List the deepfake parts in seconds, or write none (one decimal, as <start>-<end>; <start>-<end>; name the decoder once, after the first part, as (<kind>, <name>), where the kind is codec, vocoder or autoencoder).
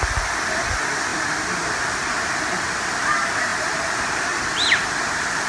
none